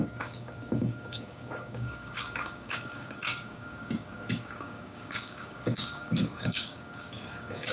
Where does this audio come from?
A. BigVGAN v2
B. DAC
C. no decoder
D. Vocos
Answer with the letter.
B